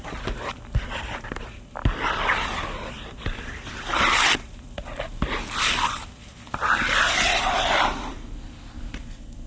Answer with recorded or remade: remade